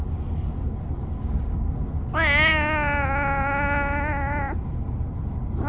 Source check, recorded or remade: recorded